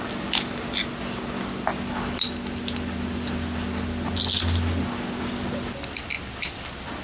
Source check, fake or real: real